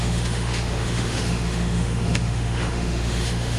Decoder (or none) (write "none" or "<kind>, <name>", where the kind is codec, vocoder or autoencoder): autoencoder, DAC-VAE